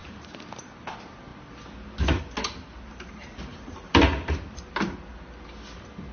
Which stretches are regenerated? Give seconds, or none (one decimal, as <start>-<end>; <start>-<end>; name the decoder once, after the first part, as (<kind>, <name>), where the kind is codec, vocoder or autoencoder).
0.0-0.7 (vocoder, BigVGAN v2); 3.5-4.0